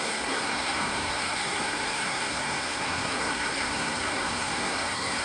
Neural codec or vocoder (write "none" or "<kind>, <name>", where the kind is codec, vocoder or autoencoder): codec, SNAC